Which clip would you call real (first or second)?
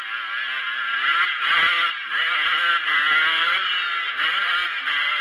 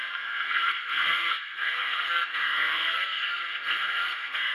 first